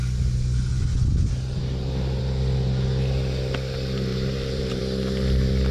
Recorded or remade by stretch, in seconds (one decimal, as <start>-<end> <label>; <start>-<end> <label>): 0.0-4.1 recorded; 4.1-4.8 remade; 4.8-5.7 recorded